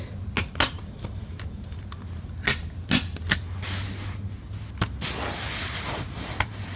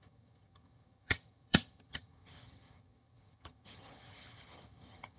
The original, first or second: first